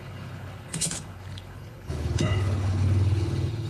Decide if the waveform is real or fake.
fake